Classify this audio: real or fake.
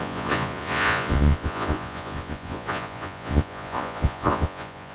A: fake